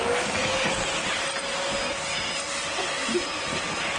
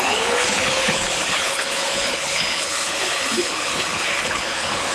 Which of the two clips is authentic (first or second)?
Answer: first